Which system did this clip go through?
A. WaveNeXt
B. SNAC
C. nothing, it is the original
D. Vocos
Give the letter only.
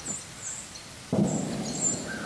C